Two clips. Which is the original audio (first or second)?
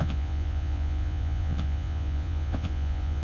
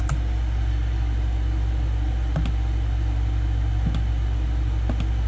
second